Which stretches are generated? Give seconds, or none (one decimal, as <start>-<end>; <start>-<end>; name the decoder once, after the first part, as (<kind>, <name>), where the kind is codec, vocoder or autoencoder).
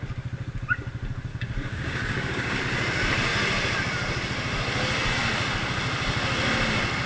1.3-2.6 (codec, DAC)